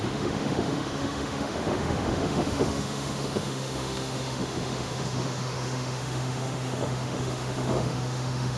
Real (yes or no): no